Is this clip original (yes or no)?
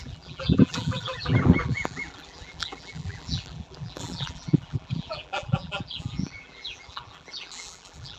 no